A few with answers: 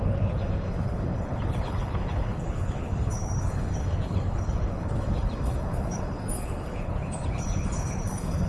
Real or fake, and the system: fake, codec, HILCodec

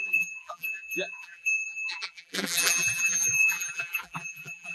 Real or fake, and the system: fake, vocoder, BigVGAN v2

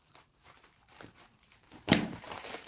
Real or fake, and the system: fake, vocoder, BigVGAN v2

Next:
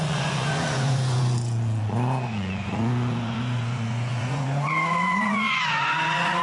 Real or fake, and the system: fake, vocoder, Vocos